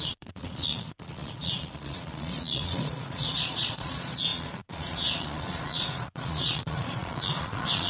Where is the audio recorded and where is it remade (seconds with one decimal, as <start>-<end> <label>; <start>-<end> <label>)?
0.0-7.9 remade